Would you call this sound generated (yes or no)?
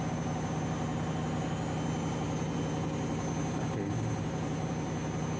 no